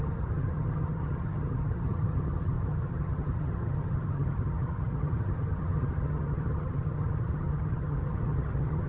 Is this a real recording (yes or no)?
no